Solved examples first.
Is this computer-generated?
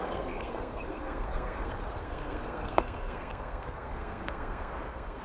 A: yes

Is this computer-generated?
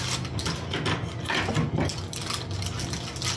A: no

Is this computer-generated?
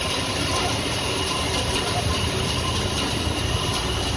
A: yes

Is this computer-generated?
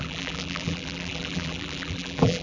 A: yes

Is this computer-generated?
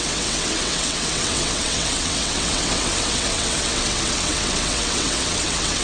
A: yes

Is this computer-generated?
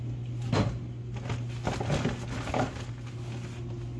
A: no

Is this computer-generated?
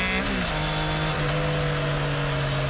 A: no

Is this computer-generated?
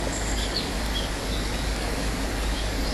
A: yes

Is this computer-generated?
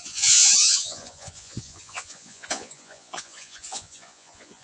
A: yes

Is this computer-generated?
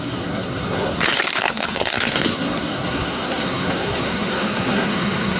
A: yes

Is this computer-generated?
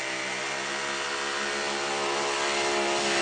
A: no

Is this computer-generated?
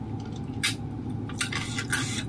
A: no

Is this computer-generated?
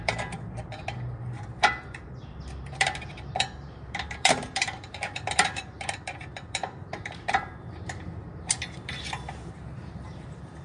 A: yes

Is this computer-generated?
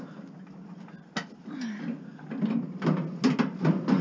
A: no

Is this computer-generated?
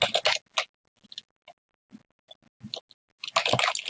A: no